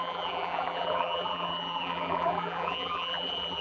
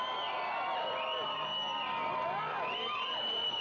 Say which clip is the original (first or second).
second